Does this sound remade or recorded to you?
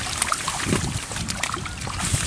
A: recorded